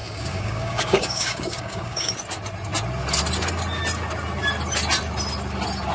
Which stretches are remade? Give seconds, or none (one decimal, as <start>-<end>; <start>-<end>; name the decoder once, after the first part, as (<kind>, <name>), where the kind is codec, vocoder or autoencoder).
0.0-2.1 (codec, DAC)